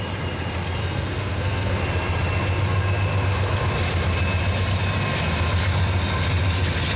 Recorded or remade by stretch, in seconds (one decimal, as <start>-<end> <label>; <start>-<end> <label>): 0.0-0.8 recorded; 0.8-1.8 remade; 1.8-7.0 recorded